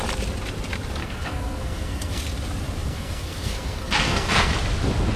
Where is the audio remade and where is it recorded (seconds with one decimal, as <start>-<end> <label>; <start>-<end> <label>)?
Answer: 0.0-1.0 recorded; 1.0-2.2 remade; 2.2-2.8 recorded; 2.8-4.5 remade; 4.5-5.2 recorded